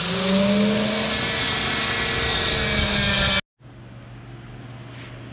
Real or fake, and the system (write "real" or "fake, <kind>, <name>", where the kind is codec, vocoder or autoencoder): real